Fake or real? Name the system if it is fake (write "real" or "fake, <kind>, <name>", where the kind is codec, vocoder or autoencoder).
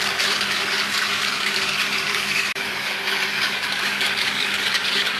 fake, codec, DAC